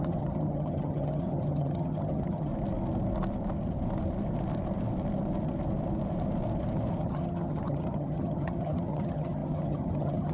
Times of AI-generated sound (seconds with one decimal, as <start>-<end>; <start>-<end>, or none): 0.0-2.5; 7.0-10.3